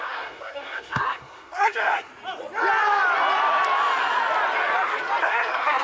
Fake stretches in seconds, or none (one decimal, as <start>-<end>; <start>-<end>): 0.0-2.1; 5.2-5.8